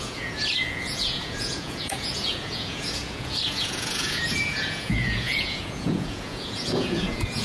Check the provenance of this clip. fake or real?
fake